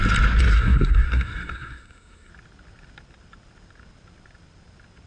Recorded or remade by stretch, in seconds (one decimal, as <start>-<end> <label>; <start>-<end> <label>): 0.0-0.5 recorded; 0.5-2.3 remade; 2.3-5.1 recorded